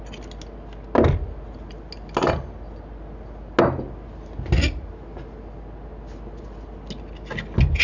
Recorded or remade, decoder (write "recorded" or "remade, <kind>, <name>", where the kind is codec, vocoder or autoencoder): recorded